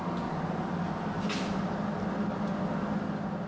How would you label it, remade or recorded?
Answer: recorded